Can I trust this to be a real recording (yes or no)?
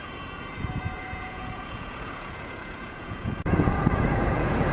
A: no